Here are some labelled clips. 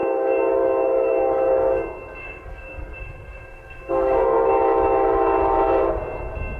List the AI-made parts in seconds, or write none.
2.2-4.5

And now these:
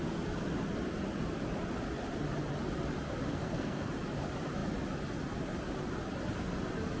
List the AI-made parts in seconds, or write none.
3.3-3.9

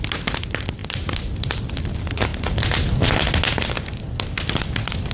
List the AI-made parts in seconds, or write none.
none